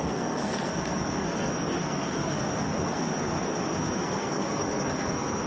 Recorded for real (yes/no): no